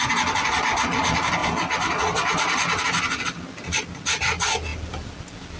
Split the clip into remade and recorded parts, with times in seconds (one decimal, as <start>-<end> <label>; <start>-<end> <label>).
0.0-5.6 recorded